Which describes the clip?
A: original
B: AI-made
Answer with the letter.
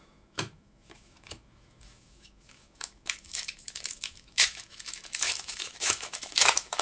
B